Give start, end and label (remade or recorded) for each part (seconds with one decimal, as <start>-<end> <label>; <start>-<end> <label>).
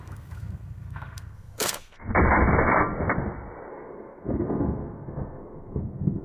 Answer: 0.0-2.1 remade; 2.1-3.7 recorded; 3.7-6.2 remade